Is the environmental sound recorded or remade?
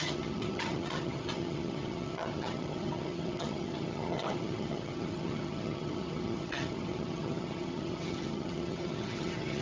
remade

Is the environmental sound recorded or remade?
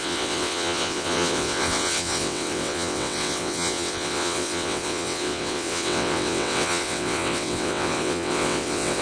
remade